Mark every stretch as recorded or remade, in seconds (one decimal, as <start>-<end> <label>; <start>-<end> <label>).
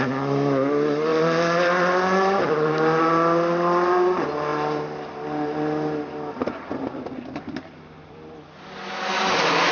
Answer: 0.0-1.1 recorded; 1.1-3.0 remade; 3.0-4.5 recorded; 4.5-8.4 remade; 8.4-9.7 recorded